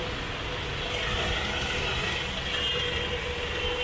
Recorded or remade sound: recorded